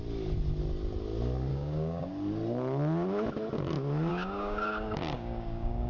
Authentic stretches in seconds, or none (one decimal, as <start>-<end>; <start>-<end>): 0.0-1.5; 2.1-4.1

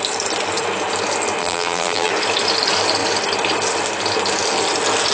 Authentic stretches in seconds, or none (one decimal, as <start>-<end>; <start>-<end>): 0.0-1.4; 2.1-5.1

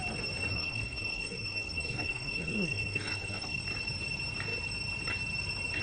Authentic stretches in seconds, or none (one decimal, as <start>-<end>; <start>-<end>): 0.0-0.5; 3.6-5.8

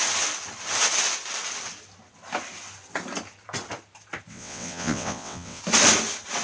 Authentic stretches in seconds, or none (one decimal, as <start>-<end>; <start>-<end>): 0.0-4.3; 5.6-6.4

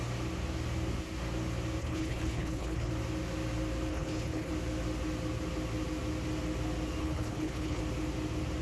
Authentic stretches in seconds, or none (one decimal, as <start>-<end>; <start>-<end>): 0.0-1.8; 2.9-3.9; 4.5-7.0; 7.8-8.6

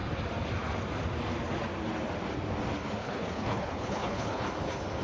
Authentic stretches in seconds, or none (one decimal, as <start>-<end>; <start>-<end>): 0.0-3.0; 4.4-5.0

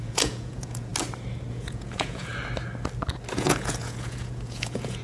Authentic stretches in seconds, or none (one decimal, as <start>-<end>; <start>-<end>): 0.9-1.5; 2.3-3.3